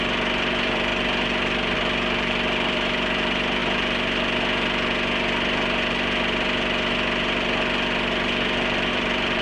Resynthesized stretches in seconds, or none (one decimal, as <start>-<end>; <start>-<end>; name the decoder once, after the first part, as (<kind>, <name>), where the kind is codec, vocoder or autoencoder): 0.0-3.6 (vocoder, BigVGAN v2); 8.9-9.4